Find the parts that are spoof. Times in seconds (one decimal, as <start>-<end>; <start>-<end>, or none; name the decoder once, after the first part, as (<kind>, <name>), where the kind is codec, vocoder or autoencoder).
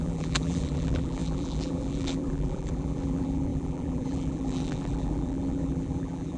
0.0-6.4 (vocoder, BigVGAN v2)